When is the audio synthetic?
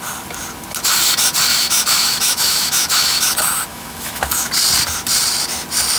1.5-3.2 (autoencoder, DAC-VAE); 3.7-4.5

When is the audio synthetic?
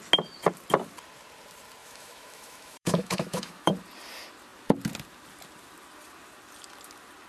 1.8-3.7 (autoencoder, DAC-VAE)